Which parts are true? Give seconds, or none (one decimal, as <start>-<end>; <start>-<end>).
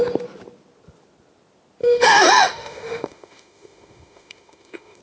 0.0-1.8